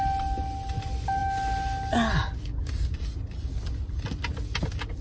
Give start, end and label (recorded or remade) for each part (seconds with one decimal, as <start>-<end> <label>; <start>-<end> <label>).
0.0-5.0 recorded